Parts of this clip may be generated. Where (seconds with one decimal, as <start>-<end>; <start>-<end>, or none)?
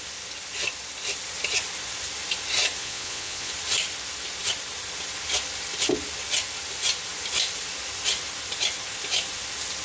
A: 2.8-3.5